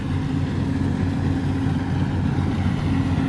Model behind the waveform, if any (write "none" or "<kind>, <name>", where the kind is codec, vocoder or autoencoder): none